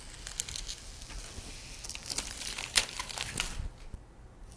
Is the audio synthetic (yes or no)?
no